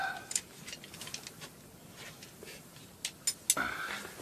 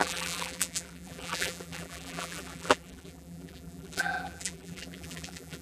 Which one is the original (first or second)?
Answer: first